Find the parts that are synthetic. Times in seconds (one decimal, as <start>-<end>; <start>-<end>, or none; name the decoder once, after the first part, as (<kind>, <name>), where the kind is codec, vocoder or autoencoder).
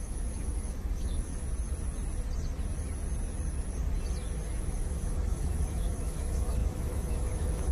0.0-1.3 (autoencoder, DAC-VAE); 4.6-7.7